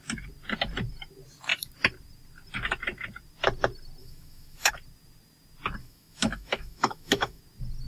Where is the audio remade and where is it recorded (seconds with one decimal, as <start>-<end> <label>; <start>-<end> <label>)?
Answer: 0.0-4.0 recorded; 4.0-4.7 remade; 4.7-5.8 recorded; 5.8-7.4 remade; 7.4-7.9 recorded